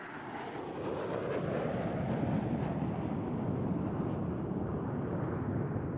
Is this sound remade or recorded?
recorded